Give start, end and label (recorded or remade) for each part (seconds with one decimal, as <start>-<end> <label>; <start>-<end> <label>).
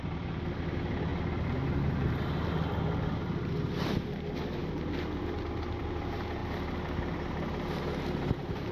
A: 0.0-8.7 recorded